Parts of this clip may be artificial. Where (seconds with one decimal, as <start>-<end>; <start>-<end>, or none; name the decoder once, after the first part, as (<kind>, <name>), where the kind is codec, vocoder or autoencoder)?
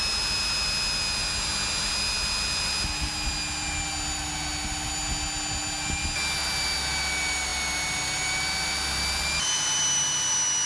none